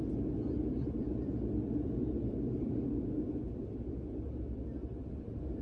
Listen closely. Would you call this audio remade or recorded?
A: remade